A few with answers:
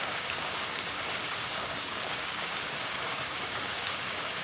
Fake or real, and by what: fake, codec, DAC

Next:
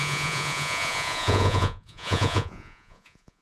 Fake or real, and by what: fake, vocoder, Vocos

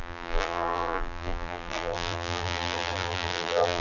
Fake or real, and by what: fake, vocoder, BigVGAN v2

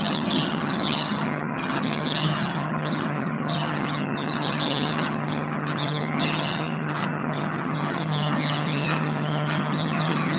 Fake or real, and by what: fake, vocoder, HiFi-GAN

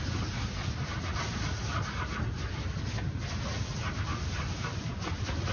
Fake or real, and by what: real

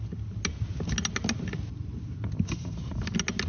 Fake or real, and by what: real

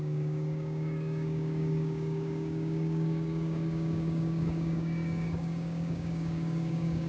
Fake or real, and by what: fake, codec, DAC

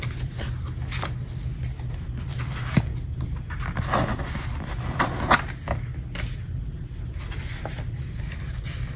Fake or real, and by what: real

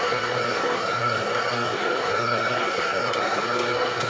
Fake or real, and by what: fake, codec, SNAC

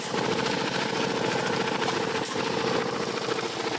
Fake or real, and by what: real